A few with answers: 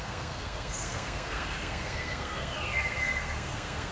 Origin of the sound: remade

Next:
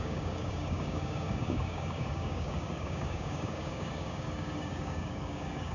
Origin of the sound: remade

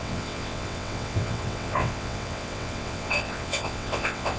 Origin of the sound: remade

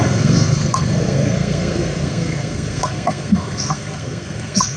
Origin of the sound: remade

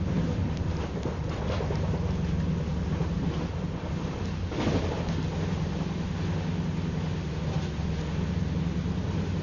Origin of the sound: recorded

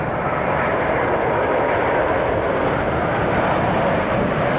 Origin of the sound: recorded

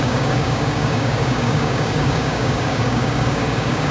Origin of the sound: remade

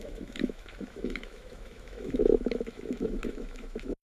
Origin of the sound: remade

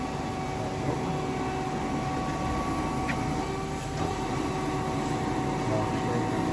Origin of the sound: recorded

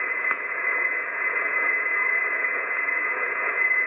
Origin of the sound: remade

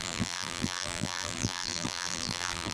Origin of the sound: remade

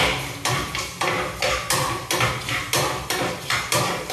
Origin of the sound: recorded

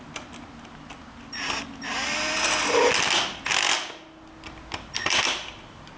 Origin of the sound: recorded